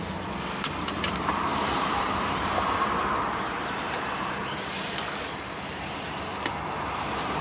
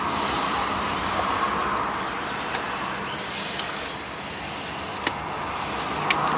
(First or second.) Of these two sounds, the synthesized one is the first